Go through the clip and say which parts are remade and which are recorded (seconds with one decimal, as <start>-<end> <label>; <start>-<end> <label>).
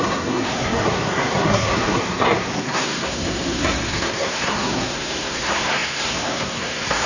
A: 0.0-7.1 remade